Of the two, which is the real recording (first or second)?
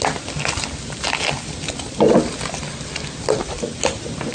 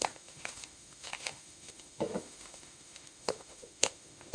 first